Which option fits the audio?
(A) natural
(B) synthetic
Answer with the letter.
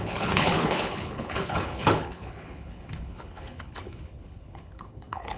B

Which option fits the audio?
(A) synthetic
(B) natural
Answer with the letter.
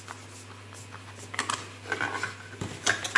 B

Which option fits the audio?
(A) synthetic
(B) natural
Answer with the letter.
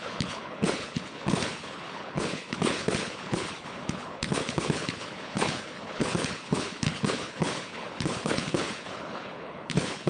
A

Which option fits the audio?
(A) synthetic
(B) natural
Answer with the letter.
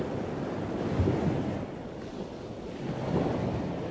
B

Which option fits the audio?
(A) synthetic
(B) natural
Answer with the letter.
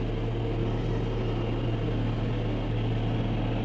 B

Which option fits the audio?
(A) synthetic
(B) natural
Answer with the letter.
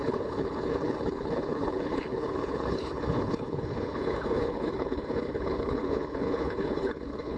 A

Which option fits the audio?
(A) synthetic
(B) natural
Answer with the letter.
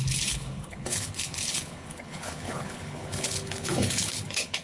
A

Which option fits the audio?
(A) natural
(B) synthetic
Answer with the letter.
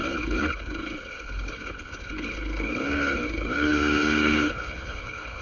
B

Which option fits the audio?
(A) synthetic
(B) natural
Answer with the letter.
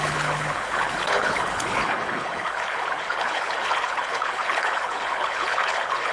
A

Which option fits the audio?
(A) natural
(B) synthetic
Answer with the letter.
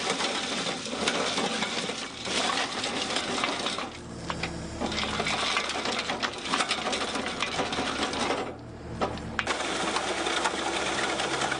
A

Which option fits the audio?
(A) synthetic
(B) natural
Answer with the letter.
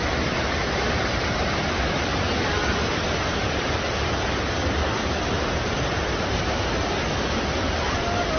B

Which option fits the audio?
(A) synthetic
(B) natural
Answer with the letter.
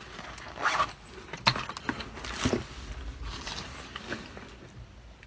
B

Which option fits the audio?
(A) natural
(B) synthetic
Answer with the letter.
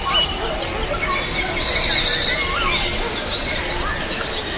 A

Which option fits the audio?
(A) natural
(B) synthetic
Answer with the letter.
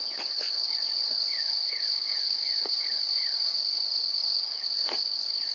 B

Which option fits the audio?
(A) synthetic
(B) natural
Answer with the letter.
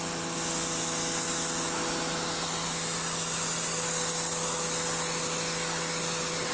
B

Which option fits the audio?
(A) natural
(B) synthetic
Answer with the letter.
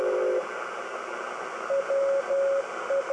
A